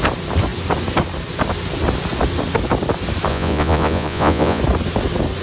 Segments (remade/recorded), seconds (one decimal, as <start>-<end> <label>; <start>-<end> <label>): 0.0-3.3 recorded; 3.3-4.6 remade; 4.6-5.4 recorded